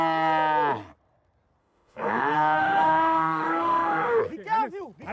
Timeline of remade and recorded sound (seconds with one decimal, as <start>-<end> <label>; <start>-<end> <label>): 0.0-1.6 recorded; 1.6-4.2 remade; 4.2-5.1 recorded